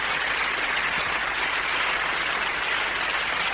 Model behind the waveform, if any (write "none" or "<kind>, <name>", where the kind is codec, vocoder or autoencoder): none